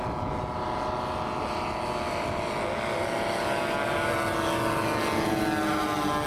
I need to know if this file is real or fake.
real